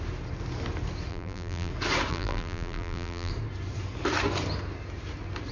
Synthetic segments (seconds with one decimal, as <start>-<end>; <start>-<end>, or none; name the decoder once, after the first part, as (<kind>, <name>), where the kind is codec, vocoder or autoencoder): 1.1-1.7 (vocoder, BigVGAN v2); 2.1-3.3